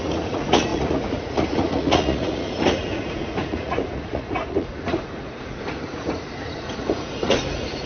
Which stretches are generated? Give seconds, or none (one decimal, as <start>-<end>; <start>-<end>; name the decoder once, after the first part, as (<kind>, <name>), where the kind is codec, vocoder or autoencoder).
0.0-7.9 (vocoder, Vocos)